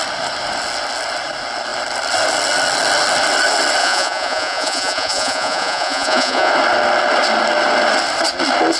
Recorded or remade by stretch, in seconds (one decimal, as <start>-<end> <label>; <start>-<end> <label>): 0.0-3.8 recorded; 3.8-6.5 remade; 6.5-8.8 recorded